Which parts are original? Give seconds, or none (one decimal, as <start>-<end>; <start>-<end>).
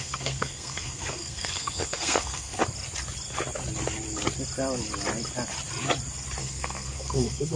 2.6-6.4